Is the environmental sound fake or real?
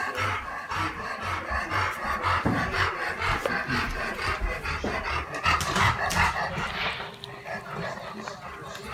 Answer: real